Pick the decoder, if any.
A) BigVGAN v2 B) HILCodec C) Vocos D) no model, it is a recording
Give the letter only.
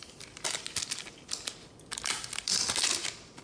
D